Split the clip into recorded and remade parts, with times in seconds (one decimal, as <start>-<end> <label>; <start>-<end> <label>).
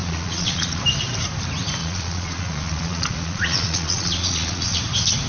0.0-0.8 remade; 0.8-1.8 recorded; 1.8-4.8 remade; 4.8-5.3 recorded